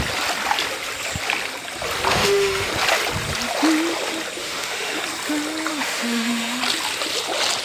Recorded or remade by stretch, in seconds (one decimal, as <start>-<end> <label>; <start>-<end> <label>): 0.0-2.1 recorded; 2.1-2.7 remade; 2.7-4.4 recorded; 4.4-5.0 remade; 5.0-5.7 recorded; 5.7-6.6 remade; 6.6-7.6 recorded